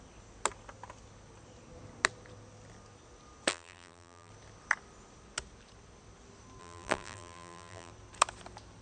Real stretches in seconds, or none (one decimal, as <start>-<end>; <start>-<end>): 0.0-3.5; 4.3-6.6; 7.9-8.8